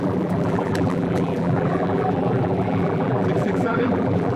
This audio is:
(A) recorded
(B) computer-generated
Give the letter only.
B